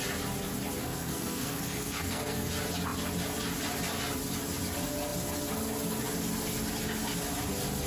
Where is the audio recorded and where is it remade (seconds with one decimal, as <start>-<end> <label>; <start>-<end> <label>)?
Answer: 0.0-0.8 recorded; 0.8-2.5 remade; 2.5-7.9 recorded